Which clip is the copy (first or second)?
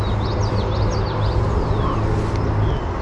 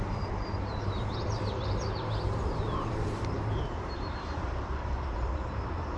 second